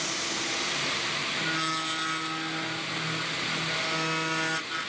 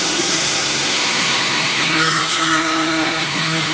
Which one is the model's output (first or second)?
second